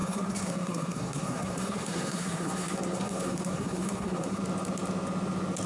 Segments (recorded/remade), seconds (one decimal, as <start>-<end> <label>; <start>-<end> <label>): 0.0-4.4 remade; 4.4-5.7 recorded